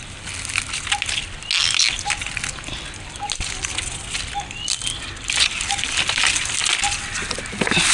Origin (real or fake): real